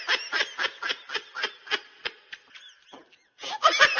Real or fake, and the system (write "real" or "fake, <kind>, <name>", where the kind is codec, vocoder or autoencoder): real